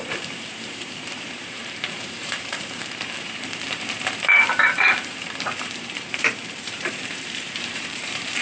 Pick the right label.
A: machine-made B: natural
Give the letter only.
A